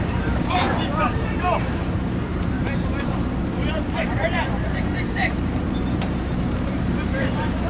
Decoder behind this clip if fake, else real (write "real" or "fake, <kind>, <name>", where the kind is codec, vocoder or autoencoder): fake, vocoder, BigVGAN v2